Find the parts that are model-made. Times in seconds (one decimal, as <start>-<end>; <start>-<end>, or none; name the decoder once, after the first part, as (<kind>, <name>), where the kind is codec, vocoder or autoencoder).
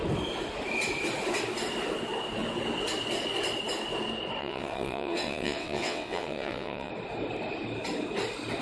4.4-6.9 (vocoder, WaveNeXt)